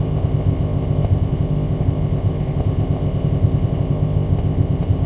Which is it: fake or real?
fake